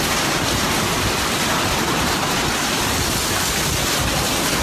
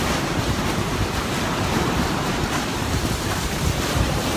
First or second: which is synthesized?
second